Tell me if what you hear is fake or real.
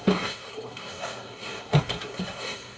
fake